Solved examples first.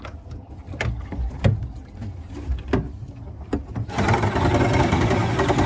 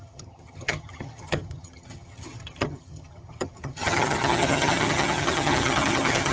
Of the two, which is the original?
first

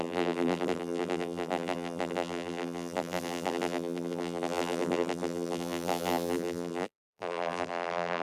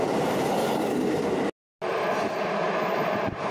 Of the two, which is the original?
second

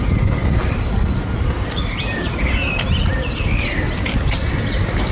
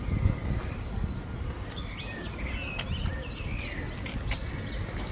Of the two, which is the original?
second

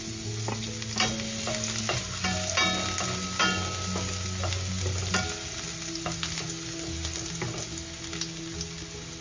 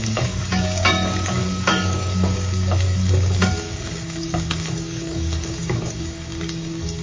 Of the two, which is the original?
first